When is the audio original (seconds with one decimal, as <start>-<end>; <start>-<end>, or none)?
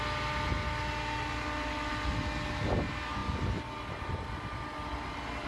0.0-5.5